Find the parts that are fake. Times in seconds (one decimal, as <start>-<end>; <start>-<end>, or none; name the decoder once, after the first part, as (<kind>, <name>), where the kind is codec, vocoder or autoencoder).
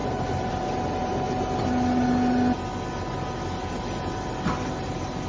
none